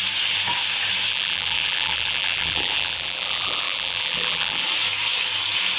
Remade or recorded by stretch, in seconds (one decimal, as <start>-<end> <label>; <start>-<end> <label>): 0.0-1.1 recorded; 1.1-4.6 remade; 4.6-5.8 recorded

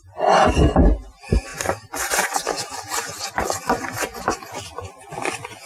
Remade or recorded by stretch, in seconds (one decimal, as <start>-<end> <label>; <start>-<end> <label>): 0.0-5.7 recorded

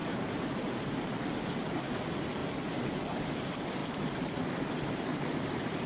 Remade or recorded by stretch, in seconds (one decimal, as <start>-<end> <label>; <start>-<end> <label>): 0.0-1.0 remade; 1.0-3.8 recorded; 3.8-5.9 remade

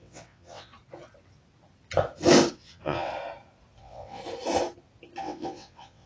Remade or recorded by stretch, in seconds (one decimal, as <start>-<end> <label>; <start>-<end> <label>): 0.0-0.7 remade; 0.7-2.5 recorded; 2.5-3.1 remade; 3.1-3.8 recorded; 3.8-4.2 remade; 4.2-5.2 recorded; 5.2-6.1 remade

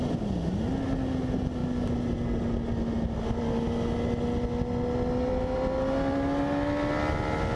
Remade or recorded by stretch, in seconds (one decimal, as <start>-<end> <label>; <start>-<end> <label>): 0.0-7.6 recorded